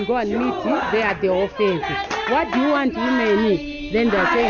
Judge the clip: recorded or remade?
recorded